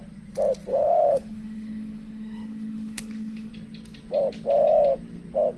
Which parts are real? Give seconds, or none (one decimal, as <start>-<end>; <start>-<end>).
0.0-0.7; 3.5-5.6

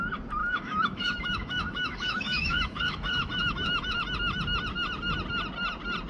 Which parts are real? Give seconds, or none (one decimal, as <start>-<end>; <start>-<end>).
0.0-0.4; 4.0-6.1

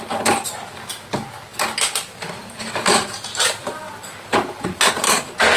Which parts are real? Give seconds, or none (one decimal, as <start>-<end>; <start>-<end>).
0.0-5.6

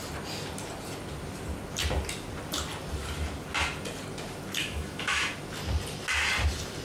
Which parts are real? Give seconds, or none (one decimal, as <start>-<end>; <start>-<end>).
0.0-4.6; 5.3-6.8

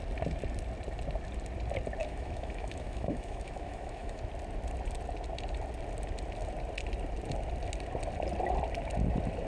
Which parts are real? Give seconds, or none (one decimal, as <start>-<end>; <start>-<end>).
0.0-2.0; 4.2-9.5

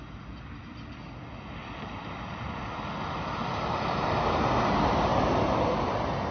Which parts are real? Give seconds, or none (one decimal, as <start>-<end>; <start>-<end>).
0.0-6.3

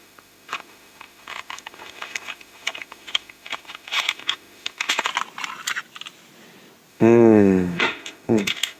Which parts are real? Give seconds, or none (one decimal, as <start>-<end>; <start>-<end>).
5.1-6.9